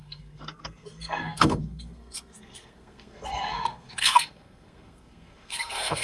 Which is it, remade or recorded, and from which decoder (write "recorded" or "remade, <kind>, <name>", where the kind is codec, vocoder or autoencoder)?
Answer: remade, codec, SNAC